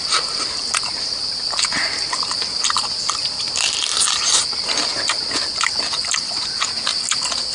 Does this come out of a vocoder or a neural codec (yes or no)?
yes